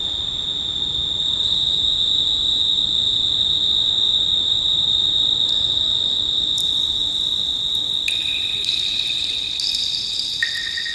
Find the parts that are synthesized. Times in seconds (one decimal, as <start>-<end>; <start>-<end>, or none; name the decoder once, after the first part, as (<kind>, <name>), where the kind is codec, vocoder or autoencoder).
none